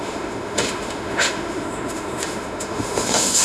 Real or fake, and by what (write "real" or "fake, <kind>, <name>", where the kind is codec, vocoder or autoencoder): fake, autoencoder, DAC-VAE